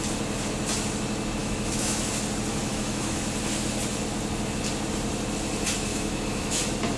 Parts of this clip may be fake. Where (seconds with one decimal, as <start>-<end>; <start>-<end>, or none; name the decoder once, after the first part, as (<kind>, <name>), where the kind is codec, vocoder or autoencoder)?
1.4-2.1 (autoencoder, DAC-VAE); 2.7-3.2; 5.9-6.6

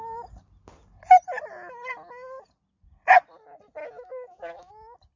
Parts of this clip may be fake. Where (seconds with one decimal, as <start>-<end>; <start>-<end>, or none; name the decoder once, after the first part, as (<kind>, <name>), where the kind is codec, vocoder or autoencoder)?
3.8-4.7 (autoencoder, DAC-VAE)